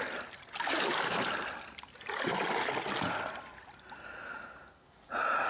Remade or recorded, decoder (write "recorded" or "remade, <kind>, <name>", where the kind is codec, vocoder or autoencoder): recorded